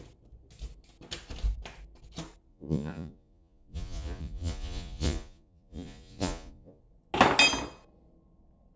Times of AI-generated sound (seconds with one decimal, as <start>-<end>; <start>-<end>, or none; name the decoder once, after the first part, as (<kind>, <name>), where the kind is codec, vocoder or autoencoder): 2.5-6.8 (vocoder, Vocos)